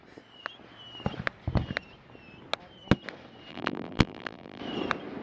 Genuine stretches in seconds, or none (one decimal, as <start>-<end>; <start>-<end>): 0.0-3.5; 4.6-5.2